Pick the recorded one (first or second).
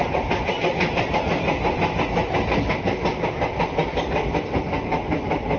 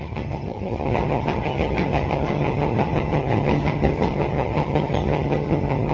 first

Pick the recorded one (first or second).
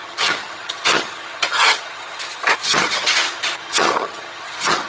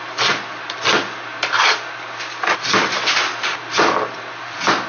second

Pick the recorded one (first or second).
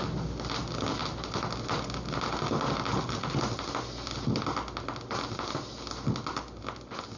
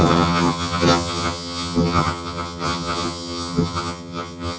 first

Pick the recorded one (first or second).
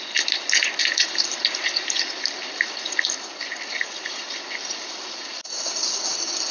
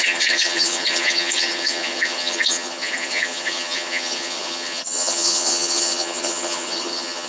first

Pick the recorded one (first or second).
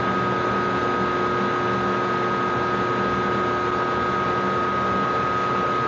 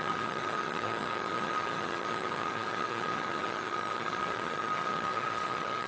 first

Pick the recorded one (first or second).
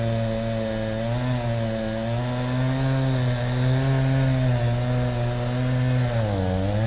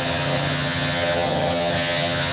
first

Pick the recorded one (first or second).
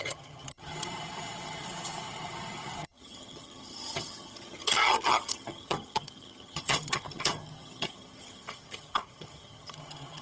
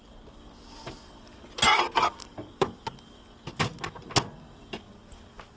second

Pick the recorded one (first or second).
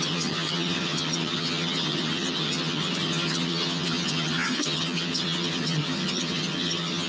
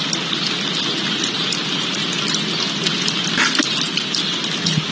second